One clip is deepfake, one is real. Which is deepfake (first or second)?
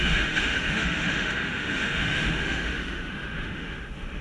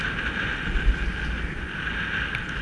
first